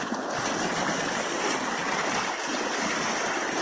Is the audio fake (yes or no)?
no